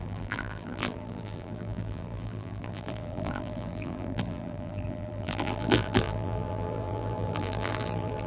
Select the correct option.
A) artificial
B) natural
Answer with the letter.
A